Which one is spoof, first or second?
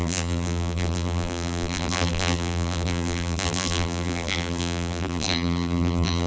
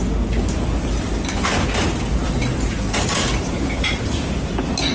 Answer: first